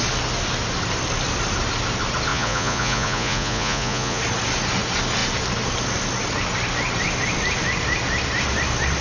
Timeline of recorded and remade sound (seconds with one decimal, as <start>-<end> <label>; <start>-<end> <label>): 0.0-2.3 recorded; 2.3-4.2 remade; 4.2-9.0 recorded